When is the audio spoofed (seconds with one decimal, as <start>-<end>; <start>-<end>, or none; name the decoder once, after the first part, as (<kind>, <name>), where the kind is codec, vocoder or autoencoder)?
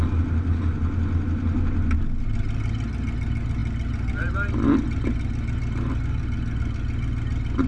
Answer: none